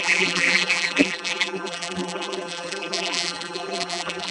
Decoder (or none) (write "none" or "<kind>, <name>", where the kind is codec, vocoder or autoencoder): vocoder, BigVGAN v2